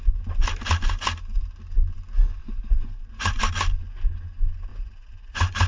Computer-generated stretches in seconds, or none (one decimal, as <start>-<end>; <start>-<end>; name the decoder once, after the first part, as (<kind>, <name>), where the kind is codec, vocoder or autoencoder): 2.4-3.4 (vocoder, Vocos); 4.7-5.7